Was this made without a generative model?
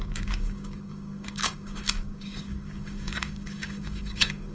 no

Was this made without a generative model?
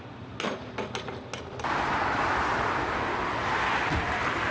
yes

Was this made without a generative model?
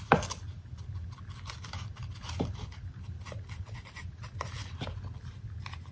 yes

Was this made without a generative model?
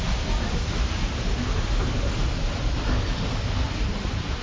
yes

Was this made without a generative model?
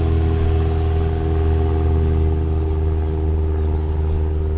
yes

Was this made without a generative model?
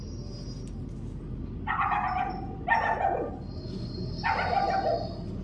yes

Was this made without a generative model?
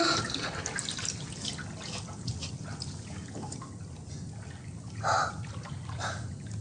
yes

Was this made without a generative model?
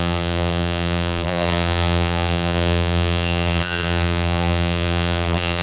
no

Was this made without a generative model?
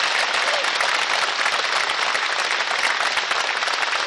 yes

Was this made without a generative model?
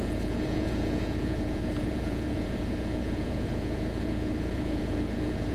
no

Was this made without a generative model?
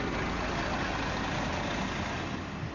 yes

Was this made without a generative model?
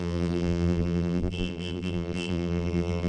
no